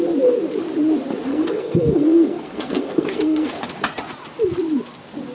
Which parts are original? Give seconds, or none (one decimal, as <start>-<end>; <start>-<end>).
0.0-1.3; 3.5-5.3